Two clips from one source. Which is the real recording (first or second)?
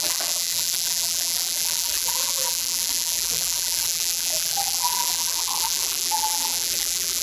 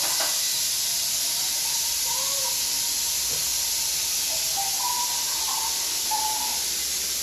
second